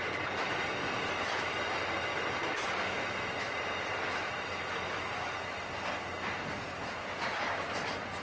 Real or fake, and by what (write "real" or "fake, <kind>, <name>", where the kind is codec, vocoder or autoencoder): real